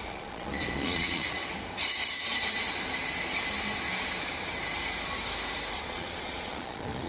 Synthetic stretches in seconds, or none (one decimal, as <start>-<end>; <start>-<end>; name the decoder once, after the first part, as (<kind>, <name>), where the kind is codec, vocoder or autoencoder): 0.0-1.4 (vocoder, Vocos); 5.7-7.1